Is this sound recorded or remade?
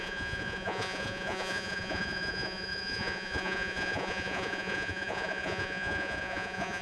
remade